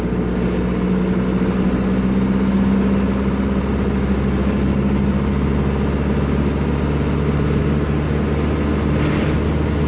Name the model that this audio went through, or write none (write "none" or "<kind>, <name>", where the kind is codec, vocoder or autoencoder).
none